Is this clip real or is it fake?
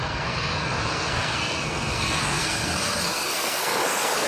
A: fake